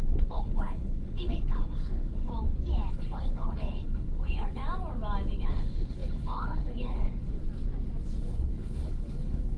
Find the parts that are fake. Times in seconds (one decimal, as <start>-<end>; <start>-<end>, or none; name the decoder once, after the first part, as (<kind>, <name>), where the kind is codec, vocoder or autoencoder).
0.0-2.3 (codec, HILCodec); 2.9-4.6; 5.4-7.4; 8.2-9.6